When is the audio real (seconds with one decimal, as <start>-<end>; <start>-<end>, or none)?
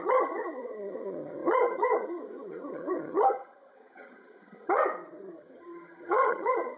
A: 4.8-5.3